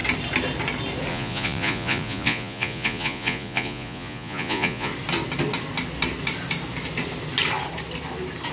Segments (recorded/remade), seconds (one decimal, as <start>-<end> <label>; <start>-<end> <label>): 0.0-1.1 recorded; 1.1-4.9 remade; 4.9-8.5 recorded